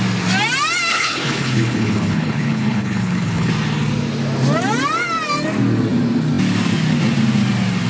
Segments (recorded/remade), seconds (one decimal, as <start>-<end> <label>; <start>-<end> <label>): 0.0-0.9 recorded; 0.9-3.5 remade; 3.5-7.9 recorded